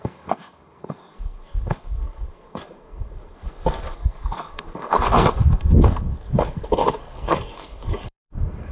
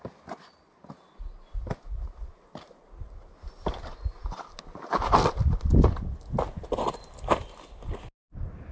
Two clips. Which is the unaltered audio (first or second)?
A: second